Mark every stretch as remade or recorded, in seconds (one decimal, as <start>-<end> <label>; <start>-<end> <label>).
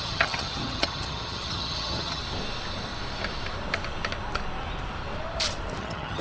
0.0-2.2 remade; 2.2-5.8 recorded; 5.8-6.2 remade